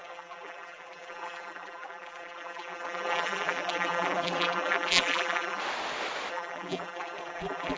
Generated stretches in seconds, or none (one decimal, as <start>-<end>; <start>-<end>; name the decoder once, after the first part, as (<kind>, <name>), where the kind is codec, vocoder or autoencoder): 0.0-5.6 (vocoder, BigVGAN v2); 6.3-7.8